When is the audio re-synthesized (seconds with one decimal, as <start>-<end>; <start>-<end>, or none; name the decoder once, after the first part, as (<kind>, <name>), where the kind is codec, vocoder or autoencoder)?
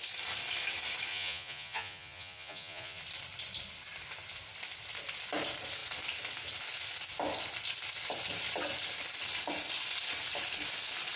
1.1-3.0 (vocoder, Vocos)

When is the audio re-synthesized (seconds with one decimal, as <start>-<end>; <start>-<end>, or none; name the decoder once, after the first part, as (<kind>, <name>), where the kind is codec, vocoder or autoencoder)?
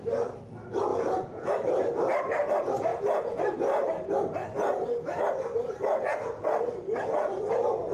0.9-1.5 (vocoder, Vocos); 2.9-3.4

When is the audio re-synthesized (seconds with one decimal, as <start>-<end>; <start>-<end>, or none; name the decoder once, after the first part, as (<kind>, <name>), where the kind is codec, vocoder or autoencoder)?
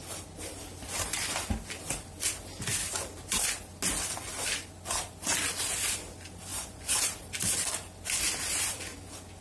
6.5-7.0 (vocoder, Vocos)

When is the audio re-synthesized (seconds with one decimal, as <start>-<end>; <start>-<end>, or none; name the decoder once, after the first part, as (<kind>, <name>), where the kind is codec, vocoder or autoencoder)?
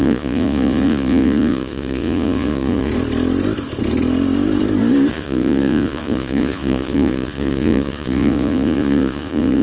0.0-2.9 (vocoder, Vocos); 5.1-9.6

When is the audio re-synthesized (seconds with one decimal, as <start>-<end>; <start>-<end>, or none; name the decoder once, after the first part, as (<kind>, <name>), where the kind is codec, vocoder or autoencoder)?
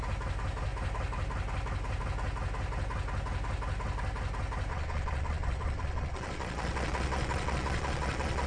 4.7-8.5 (vocoder, Vocos)